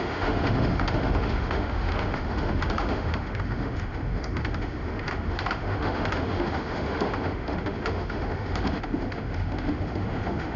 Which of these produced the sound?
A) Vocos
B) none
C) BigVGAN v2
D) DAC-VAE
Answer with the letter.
D